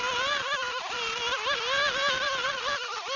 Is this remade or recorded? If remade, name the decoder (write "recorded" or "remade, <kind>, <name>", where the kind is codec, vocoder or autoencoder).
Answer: recorded